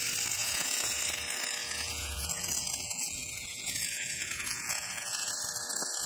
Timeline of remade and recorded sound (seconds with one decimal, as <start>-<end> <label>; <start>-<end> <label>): 0.0-0.4 recorded; 0.4-1.0 remade; 1.0-1.6 recorded; 1.6-5.3 remade; 5.3-6.1 recorded